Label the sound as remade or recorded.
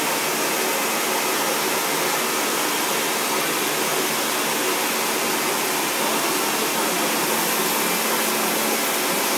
recorded